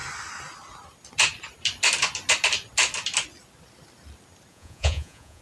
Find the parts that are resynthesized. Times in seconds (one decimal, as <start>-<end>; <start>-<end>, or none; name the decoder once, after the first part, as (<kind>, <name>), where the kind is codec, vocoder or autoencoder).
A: 4.5-5.4 (vocoder, Vocos)